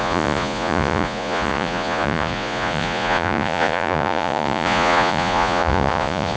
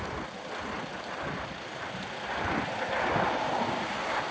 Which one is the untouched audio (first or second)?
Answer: second